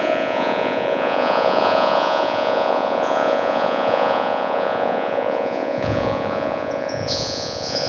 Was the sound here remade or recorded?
remade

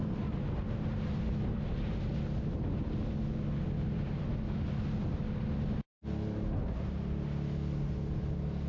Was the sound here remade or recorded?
recorded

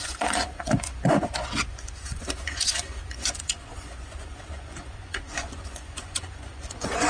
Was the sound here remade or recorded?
remade